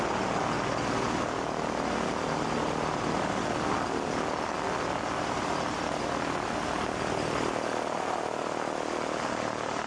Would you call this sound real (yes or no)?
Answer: yes